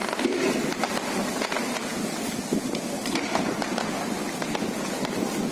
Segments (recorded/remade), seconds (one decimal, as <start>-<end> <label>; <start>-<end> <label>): 0.0-5.5 recorded